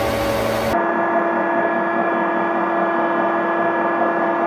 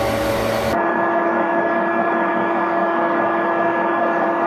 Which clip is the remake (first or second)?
second